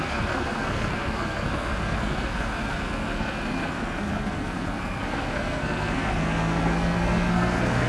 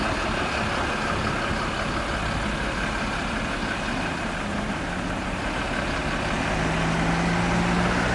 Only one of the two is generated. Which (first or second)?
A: first